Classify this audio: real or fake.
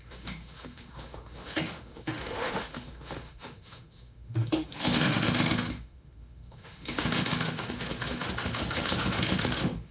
fake